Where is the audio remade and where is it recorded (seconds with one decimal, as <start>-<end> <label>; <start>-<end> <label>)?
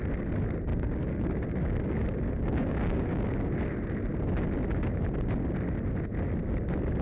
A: 0.0-0.7 recorded; 0.7-3.6 remade; 3.6-7.0 recorded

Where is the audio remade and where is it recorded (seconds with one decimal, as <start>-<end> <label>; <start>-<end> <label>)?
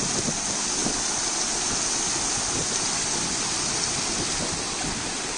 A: 0.0-5.4 recorded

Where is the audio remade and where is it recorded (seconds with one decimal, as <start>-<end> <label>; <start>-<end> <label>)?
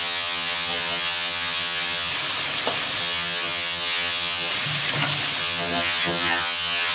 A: 0.0-2.1 remade; 2.1-3.0 recorded; 3.0-4.5 remade; 4.5-5.4 recorded; 5.4-6.9 remade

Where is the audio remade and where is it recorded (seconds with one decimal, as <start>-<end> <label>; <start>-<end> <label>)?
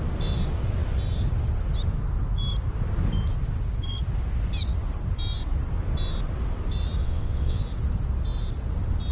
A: 0.0-7.0 recorded; 7.0-7.6 remade; 7.6-9.1 recorded